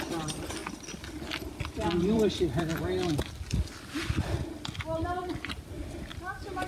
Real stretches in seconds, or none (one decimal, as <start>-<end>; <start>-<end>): 2.7-5.2